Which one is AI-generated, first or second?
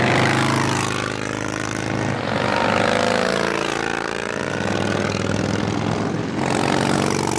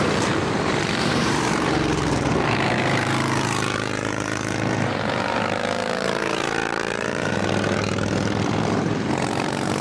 second